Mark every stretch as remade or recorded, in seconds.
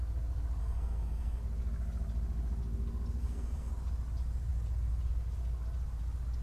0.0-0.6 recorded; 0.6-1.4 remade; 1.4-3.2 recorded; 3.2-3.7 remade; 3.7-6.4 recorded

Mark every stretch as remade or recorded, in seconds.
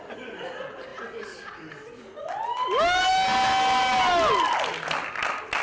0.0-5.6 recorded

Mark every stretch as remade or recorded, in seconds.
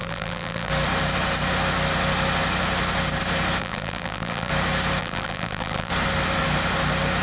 0.0-0.7 remade; 0.7-3.6 recorded; 3.6-4.5 remade; 4.5-5.0 recorded; 5.0-5.9 remade; 5.9-7.2 recorded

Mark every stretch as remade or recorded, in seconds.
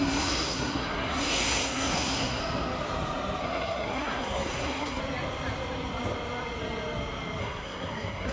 0.0-2.4 remade; 2.4-3.4 recorded; 3.4-5.0 remade; 5.0-7.4 recorded; 7.4-8.3 remade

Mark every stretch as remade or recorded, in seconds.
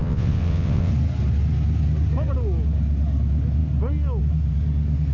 0.0-0.9 remade; 0.9-5.1 recorded